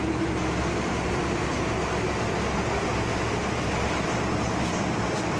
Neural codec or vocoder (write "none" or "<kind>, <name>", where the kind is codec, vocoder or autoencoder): none